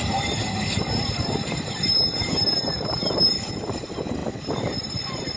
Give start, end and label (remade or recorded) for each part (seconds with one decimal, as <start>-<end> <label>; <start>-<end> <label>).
0.0-5.4 remade